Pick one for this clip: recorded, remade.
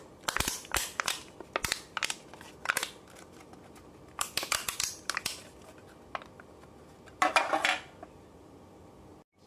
recorded